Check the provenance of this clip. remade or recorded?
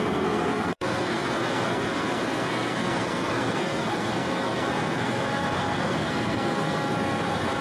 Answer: remade